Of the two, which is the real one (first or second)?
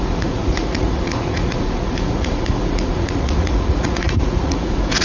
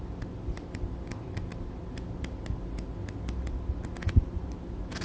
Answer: second